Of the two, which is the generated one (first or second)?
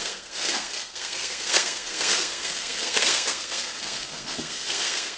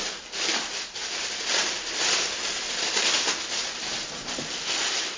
first